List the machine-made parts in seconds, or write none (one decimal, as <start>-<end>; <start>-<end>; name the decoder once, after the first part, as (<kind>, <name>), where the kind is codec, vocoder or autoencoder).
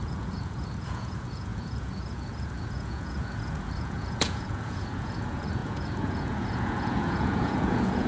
0.0-8.1 (vocoder, Vocos)